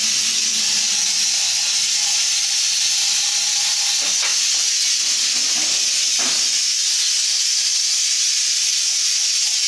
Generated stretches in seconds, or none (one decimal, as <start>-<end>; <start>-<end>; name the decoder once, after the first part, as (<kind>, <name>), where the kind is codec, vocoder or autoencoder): none